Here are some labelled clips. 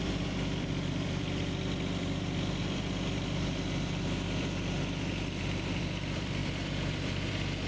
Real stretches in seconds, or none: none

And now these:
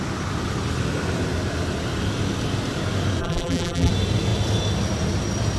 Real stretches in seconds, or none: 0.0-3.2; 3.9-5.6

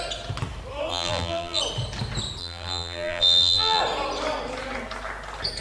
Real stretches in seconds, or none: 0.0-0.9; 1.6-2.4; 3.8-5.6

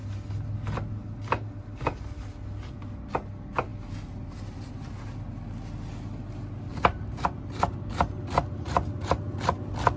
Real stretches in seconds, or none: 0.0-6.7; 7.7-10.0